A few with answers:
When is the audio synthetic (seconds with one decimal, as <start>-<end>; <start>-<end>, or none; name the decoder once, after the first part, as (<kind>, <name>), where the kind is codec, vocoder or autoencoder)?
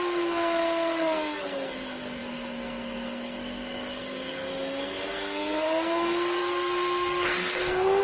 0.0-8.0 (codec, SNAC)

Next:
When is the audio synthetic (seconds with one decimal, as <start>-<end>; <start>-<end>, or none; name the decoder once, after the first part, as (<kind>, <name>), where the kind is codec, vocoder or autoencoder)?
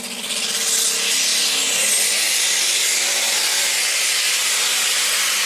none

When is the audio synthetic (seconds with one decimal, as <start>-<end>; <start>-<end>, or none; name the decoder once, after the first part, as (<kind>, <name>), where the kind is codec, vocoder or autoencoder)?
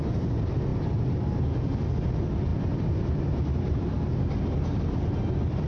none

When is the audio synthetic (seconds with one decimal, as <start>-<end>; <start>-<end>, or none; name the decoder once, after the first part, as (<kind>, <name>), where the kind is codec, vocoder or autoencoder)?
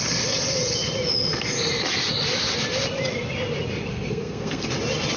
3.9-4.7 (codec, SNAC)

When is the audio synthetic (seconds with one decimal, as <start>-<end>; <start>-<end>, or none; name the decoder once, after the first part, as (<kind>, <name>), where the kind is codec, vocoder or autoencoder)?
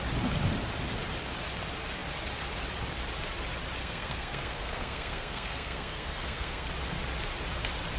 3.8-6.7 (codec, SNAC)